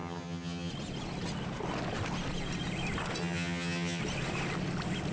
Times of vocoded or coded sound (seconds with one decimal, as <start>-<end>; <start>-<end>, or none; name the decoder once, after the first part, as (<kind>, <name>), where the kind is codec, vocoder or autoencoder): 0.0-0.7 (vocoder, HiFi-GAN); 3.2-4.0